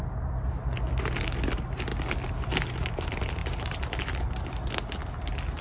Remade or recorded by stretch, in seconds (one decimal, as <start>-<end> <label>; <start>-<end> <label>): 0.0-3.4 recorded; 3.4-4.3 remade; 4.3-5.6 recorded